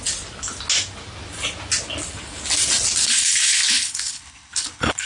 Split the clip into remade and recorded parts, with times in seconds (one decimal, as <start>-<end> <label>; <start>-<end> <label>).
0.0-3.1 recorded; 3.1-5.1 remade